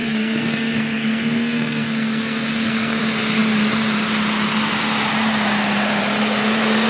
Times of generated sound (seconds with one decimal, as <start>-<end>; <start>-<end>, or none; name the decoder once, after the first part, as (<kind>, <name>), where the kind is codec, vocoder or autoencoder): 0.0-3.0 (codec, SNAC)